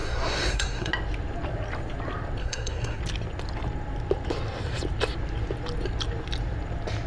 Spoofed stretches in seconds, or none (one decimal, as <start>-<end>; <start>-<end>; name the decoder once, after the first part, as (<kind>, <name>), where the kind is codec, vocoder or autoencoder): 0.0-0.9 (codec, SNAC); 2.4-3.0